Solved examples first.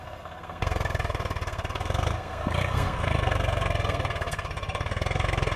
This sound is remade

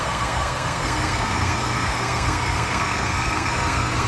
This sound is remade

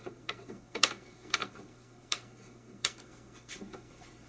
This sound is remade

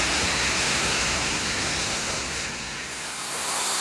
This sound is remade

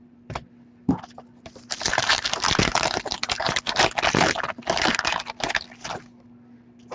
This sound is recorded